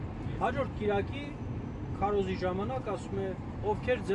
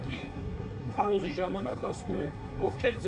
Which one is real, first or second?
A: first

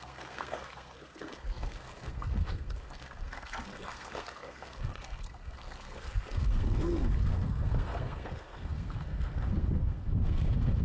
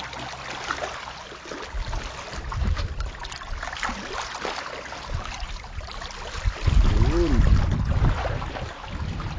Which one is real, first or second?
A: second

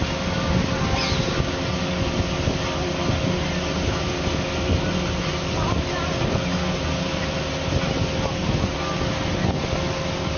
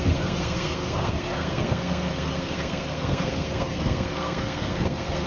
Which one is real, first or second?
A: first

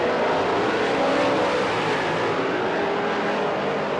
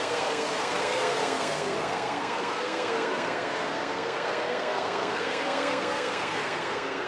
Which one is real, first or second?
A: first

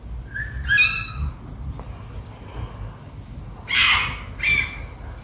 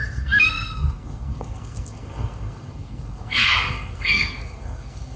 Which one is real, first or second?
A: first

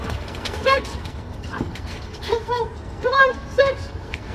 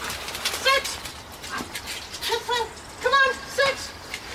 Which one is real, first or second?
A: second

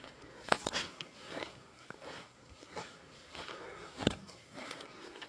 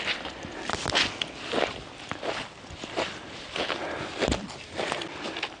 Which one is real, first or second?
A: second